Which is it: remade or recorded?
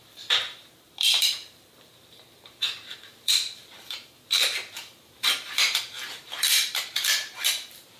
remade